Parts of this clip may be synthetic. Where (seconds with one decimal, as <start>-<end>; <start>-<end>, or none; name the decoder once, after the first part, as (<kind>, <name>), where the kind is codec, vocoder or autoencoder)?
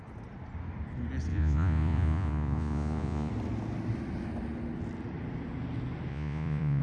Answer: 1.3-3.3 (vocoder, Vocos); 6.1-6.8